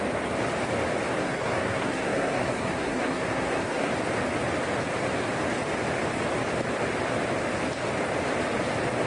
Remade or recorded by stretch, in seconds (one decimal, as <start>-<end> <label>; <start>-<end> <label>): 0.0-1.2 recorded; 1.2-3.9 remade; 3.9-9.1 recorded